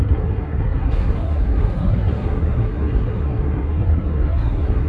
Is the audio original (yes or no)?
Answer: no